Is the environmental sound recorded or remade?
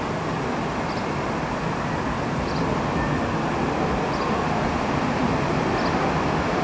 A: recorded